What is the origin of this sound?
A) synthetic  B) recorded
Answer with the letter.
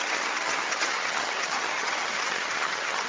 A